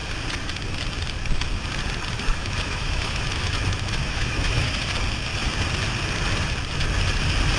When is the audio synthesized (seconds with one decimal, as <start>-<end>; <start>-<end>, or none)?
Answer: 2.3-4.7